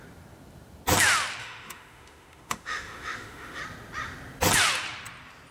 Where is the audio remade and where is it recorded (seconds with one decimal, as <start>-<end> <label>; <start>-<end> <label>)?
0.0-1.4 recorded; 1.4-3.6 remade; 3.6-5.5 recorded